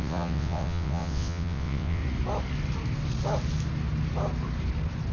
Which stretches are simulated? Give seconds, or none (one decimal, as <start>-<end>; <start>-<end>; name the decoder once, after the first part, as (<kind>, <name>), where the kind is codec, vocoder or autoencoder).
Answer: 0.0-2.0 (vocoder, WaveNeXt)